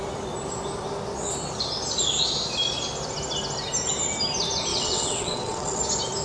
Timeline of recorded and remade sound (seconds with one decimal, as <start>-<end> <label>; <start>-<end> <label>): 0.0-4.7 recorded; 4.7-5.8 remade; 5.8-6.2 recorded